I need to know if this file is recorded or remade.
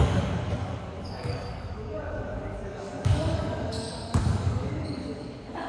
remade